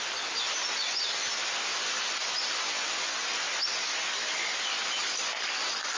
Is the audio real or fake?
real